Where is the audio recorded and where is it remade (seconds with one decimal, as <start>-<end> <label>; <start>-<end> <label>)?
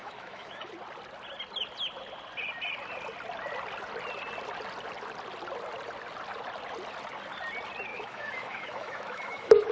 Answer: 0.0-0.7 remade; 0.7-7.9 recorded; 7.9-9.7 remade